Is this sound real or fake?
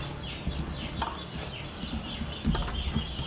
real